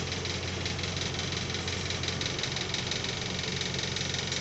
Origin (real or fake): real